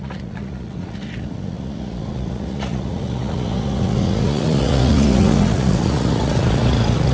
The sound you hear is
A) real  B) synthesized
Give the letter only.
B